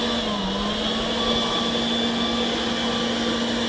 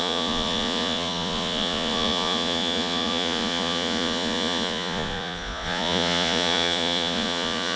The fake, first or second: second